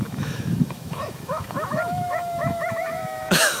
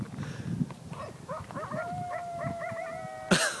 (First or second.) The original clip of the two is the second